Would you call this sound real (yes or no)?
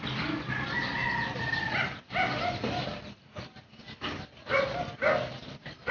yes